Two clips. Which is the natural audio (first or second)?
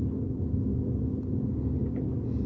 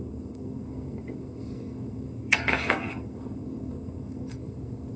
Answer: first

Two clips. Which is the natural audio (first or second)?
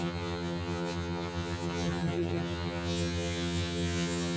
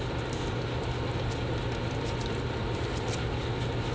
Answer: second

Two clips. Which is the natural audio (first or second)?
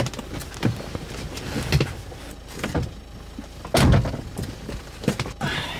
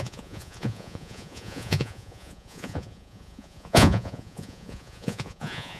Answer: first